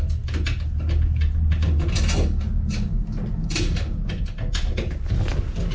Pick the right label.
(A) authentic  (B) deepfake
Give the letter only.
A